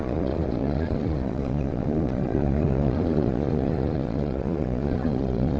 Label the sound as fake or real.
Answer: fake